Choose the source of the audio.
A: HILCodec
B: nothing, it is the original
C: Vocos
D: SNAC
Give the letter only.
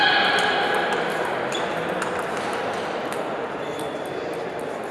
B